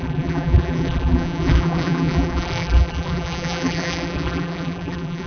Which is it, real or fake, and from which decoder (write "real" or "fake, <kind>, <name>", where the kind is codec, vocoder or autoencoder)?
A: fake, vocoder, BigVGAN v2